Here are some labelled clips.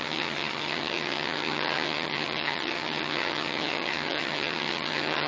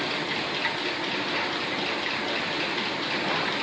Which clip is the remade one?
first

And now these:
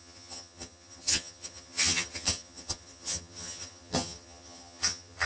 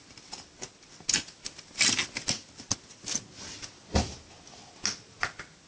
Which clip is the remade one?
first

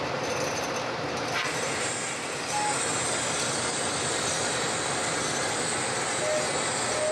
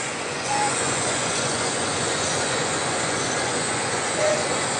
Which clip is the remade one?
second